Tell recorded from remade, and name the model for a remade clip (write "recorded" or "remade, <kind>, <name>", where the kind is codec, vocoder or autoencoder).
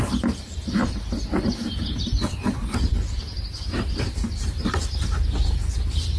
remade, vocoder, BigVGAN v2